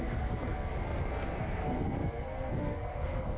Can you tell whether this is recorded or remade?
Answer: remade